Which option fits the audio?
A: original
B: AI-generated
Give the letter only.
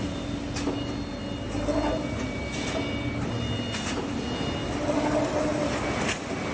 A